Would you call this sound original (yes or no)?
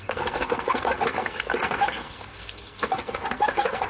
no